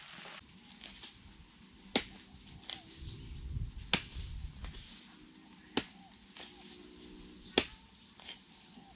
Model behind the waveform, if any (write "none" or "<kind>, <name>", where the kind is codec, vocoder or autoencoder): none